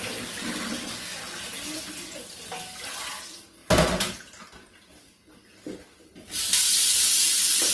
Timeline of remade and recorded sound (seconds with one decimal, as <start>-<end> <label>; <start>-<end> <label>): 0.0-1.1 recorded; 1.1-1.9 remade; 1.9-3.6 recorded; 3.6-5.3 remade; 5.3-7.7 recorded